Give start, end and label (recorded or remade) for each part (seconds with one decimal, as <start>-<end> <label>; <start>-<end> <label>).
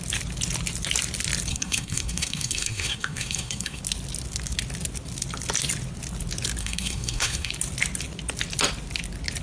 0.0-1.5 recorded; 1.5-3.8 remade; 3.8-6.6 recorded; 6.6-7.5 remade; 7.5-9.4 recorded